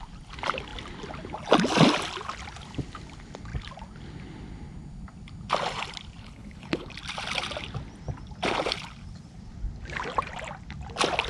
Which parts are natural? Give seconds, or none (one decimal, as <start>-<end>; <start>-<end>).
0.0-6.2; 6.9-11.3